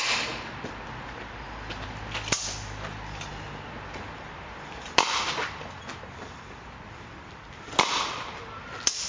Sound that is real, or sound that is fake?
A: fake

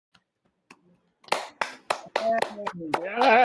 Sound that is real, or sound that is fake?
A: real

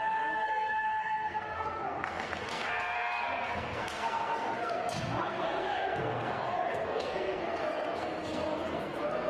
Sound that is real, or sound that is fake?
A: fake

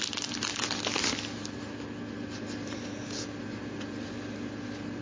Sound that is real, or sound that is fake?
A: real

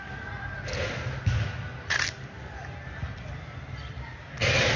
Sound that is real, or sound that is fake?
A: real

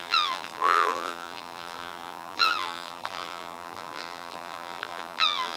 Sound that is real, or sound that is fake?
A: fake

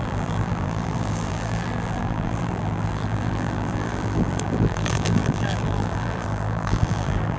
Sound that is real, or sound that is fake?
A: fake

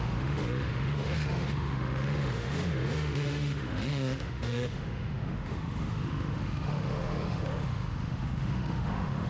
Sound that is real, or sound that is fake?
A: fake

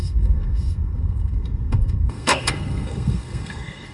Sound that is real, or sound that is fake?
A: fake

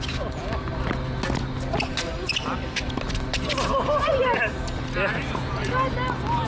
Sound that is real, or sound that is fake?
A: real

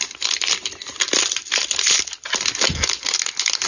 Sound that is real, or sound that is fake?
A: real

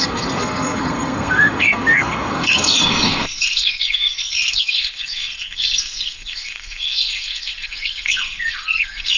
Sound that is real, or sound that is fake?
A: fake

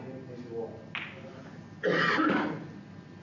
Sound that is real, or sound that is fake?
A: real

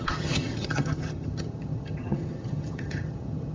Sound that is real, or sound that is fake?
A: fake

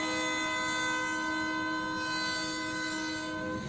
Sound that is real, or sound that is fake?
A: real